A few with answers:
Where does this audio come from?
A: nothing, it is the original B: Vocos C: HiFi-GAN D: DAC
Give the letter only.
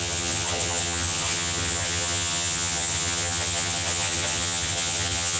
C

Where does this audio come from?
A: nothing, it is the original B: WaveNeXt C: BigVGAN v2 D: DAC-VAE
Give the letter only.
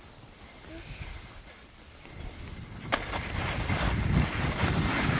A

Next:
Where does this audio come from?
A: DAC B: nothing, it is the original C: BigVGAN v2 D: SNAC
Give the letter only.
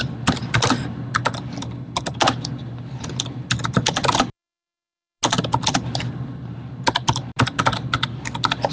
B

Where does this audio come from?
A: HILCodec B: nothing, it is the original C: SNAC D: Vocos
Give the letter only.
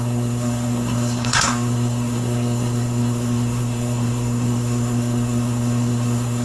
C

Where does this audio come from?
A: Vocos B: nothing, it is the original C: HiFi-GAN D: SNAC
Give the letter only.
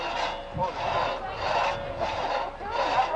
B